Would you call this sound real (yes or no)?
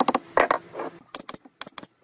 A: yes